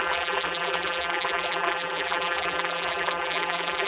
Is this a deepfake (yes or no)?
yes